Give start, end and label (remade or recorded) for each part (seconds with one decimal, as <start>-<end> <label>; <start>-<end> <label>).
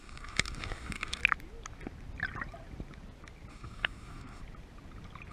0.0-1.2 remade; 1.2-3.5 recorded; 3.5-4.4 remade; 4.4-5.3 recorded